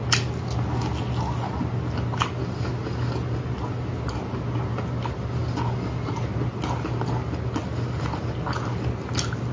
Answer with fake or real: real